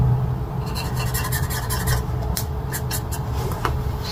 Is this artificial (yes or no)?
no